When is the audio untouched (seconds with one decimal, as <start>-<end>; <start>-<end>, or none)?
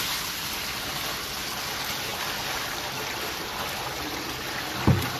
0.0-5.2